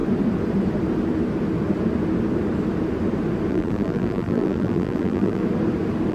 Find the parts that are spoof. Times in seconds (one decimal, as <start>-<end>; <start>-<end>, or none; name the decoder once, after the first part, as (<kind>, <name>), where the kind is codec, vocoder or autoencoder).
3.5-5.4 (vocoder, BigVGAN v2)